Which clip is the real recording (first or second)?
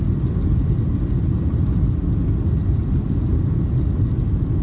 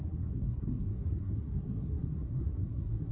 first